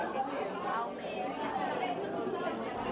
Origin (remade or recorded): recorded